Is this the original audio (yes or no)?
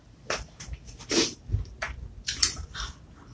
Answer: yes